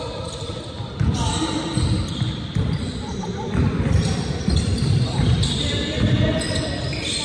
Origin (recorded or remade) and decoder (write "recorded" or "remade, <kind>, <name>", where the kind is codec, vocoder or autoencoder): remade, vocoder, BigVGAN v2